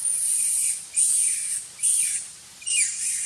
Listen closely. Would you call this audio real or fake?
real